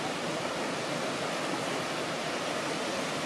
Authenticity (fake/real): real